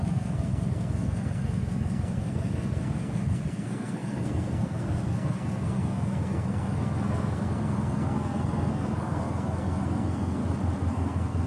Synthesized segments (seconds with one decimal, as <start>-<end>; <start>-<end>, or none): 0.0-10.4; 10.9-11.5